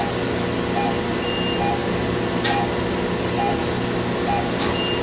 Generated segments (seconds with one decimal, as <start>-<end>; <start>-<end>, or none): none